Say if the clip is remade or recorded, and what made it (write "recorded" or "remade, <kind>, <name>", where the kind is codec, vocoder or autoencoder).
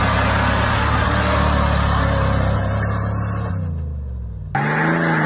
recorded